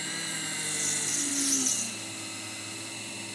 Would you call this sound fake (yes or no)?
no